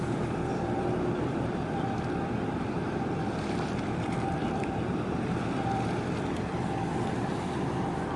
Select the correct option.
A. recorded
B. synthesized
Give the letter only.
B